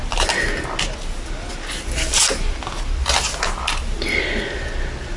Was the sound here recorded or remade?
recorded